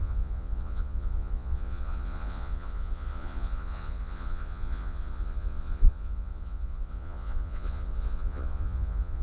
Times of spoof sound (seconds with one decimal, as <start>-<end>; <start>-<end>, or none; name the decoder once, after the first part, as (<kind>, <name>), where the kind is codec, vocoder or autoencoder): 0.0-9.2 (vocoder, Vocos)